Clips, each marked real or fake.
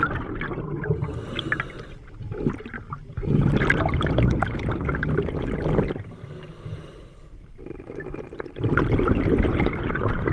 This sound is real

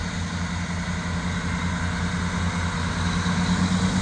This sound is real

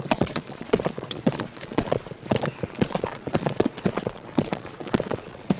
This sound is fake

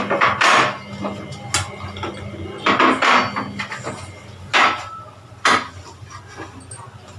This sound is real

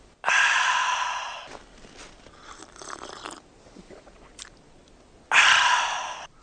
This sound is real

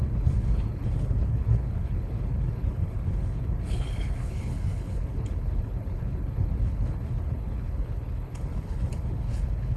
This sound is fake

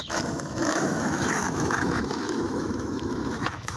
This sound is fake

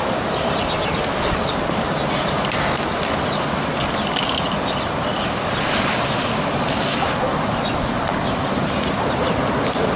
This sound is real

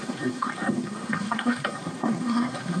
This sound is fake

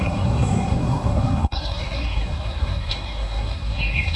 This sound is fake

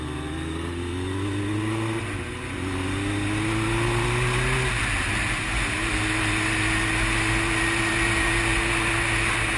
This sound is real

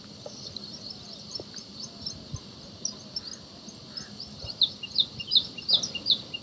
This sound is real